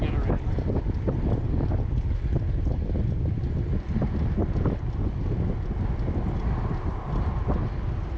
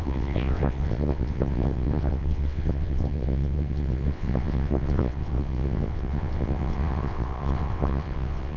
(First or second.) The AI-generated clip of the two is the second